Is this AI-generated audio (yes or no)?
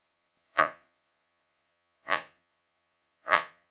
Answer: yes